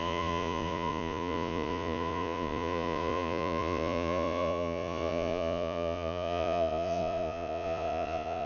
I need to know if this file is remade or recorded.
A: remade